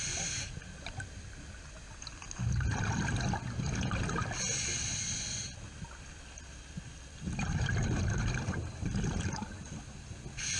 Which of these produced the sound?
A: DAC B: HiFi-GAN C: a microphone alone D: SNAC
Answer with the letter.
C